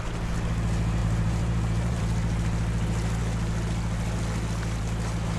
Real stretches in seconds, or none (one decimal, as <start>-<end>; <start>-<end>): 0.0-1.0; 2.0-5.4